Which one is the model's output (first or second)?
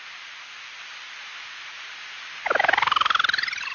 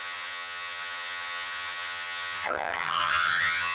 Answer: second